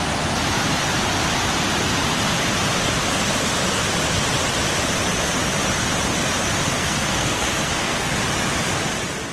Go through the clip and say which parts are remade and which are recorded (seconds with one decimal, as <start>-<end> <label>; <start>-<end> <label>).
0.0-6.7 recorded; 6.7-8.1 remade; 8.1-9.3 recorded